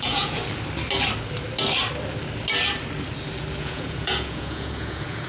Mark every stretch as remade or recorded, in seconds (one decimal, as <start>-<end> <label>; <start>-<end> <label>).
0.0-0.4 remade; 0.4-3.6 recorded; 3.6-5.3 remade